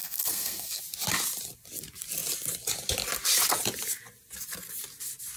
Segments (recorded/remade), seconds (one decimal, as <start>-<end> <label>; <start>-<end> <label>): 0.0-0.8 remade; 0.8-5.4 recorded

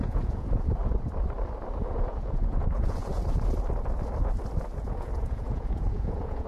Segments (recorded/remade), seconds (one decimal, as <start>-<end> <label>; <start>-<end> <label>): 0.0-0.8 remade; 0.8-1.8 recorded; 1.8-3.1 remade; 3.1-4.8 recorded; 4.8-6.5 remade

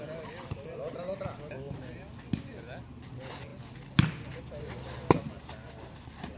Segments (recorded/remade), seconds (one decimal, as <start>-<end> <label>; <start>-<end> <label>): 0.0-6.4 recorded

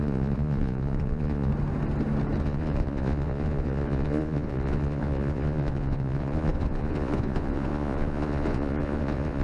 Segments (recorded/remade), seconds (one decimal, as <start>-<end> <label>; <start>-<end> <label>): 0.0-1.5 remade; 1.5-2.4 recorded; 2.4-9.4 remade